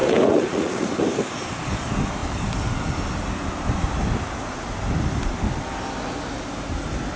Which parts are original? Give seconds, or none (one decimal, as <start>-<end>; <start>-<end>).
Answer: 1.0-7.2